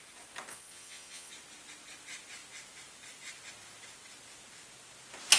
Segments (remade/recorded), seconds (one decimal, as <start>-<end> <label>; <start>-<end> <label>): 0.0-0.5 recorded; 0.5-1.3 remade; 1.3-5.4 recorded